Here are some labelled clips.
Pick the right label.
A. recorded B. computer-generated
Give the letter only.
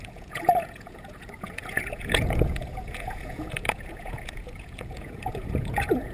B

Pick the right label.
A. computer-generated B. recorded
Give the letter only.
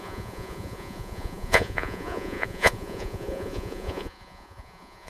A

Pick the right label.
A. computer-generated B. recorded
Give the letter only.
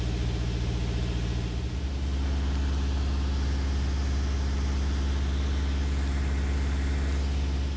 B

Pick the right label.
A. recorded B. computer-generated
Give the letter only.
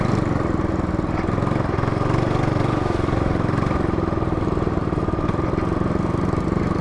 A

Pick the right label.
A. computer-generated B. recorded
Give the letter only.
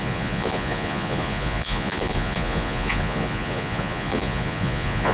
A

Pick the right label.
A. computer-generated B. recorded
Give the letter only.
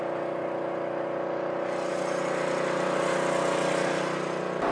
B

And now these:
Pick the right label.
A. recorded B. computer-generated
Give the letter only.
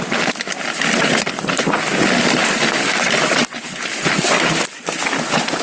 A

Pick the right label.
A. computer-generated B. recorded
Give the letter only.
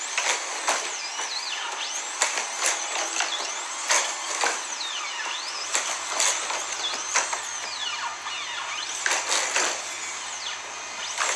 B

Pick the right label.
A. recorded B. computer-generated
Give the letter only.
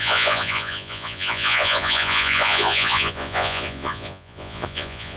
B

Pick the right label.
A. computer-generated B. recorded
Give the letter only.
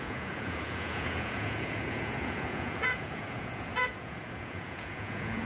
A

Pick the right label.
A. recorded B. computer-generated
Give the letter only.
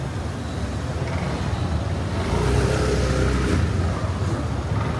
A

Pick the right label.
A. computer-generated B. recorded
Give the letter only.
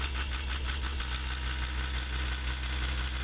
B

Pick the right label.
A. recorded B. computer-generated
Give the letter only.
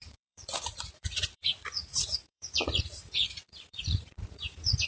B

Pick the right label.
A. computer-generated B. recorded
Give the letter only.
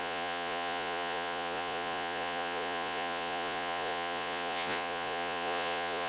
A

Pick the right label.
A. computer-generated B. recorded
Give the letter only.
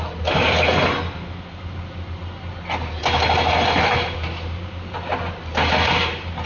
B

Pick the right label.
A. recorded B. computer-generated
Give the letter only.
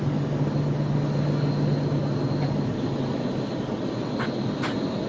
A